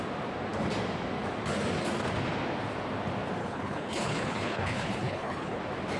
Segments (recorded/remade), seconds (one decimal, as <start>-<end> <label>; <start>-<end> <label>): 0.0-3.4 recorded; 3.4-5.6 remade; 5.6-6.0 recorded

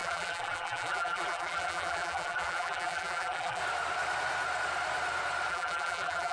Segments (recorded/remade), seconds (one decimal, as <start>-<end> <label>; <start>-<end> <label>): 0.0-3.6 remade; 3.6-5.5 recorded; 5.5-6.3 remade

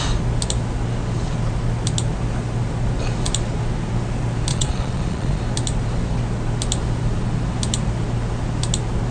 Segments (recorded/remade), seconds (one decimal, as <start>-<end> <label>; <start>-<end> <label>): 0.0-4.5 recorded; 4.5-5.4 remade; 5.4-9.1 recorded

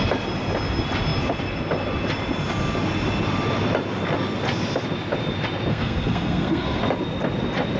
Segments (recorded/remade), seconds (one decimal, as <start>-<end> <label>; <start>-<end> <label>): 0.0-5.7 recorded; 5.7-6.8 remade; 6.8-7.8 recorded

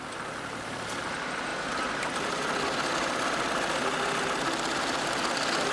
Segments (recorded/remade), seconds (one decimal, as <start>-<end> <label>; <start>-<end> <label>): 0.0-5.7 recorded